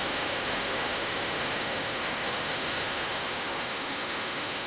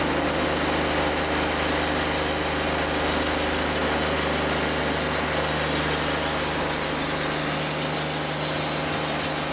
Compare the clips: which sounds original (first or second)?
second